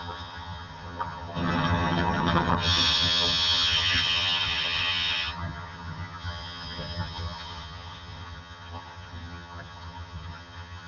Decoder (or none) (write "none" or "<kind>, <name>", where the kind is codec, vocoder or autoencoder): vocoder, HiFi-GAN